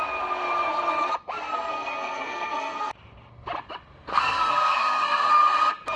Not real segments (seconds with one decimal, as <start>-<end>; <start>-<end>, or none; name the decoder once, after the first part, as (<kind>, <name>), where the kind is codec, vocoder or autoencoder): 1.5-2.9 (codec, SNAC); 4.1-5.3